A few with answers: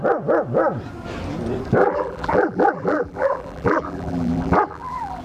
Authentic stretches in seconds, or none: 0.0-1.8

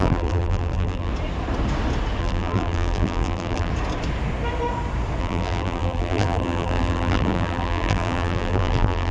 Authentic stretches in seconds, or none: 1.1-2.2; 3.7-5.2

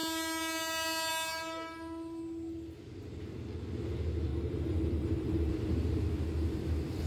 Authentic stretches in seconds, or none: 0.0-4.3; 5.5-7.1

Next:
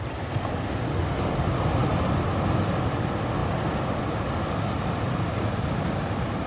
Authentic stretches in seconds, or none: 0.0-6.5

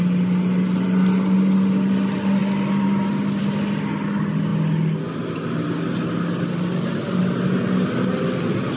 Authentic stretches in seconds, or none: 0.0-8.8

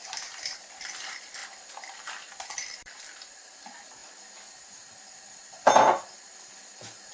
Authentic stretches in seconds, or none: 1.4-2.1; 4.0-4.6

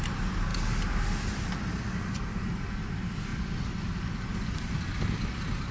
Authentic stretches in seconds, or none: 0.0-5.7

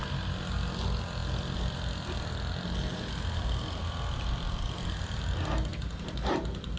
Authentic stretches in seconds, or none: 0.0-6.8